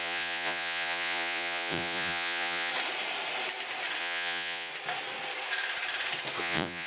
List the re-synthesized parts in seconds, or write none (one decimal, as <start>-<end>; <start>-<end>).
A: 0.0-2.7; 4.0-4.7; 6.4-6.9